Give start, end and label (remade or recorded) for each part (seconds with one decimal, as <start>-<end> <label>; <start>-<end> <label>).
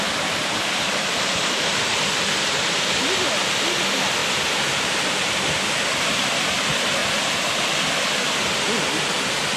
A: 0.0-4.2 remade; 4.2-5.1 recorded; 5.1-7.0 remade; 7.0-9.6 recorded